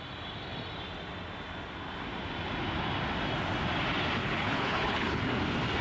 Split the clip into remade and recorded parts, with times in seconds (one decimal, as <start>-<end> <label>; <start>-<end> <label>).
0.0-4.2 recorded; 4.2-5.2 remade; 5.2-5.8 recorded